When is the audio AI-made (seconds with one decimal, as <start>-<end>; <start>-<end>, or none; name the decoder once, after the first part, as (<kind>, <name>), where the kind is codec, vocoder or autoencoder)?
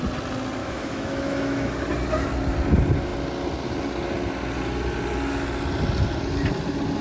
0.6-1.7 (autoencoder, DAC-VAE)